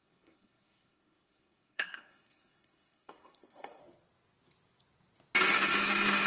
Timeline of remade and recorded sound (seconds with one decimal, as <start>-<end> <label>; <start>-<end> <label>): 0.0-3.8 remade; 3.8-6.3 recorded

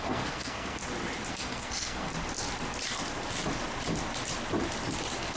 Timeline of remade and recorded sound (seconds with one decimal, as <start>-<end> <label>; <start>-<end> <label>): 0.0-0.8 remade; 0.8-1.3 recorded; 1.3-2.1 remade; 2.1-5.4 recorded